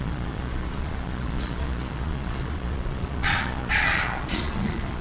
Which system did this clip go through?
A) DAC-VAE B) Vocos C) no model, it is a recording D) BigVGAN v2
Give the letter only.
B